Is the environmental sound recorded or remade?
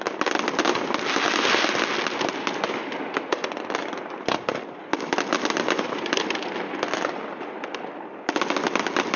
recorded